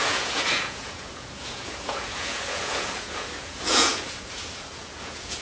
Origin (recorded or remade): remade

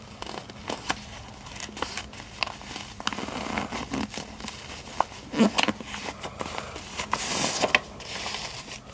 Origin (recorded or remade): recorded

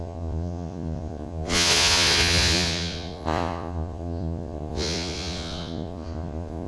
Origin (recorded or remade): remade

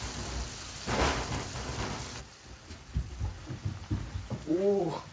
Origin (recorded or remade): recorded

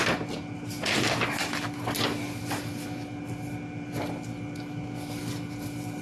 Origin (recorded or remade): recorded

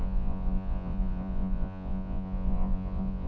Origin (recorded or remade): remade